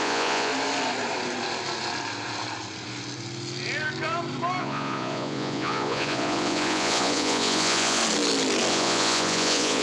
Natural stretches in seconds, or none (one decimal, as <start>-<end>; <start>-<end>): 0.5-4.6; 8.0-8.7